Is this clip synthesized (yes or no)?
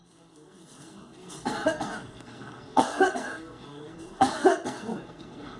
yes